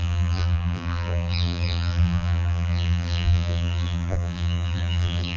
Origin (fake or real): fake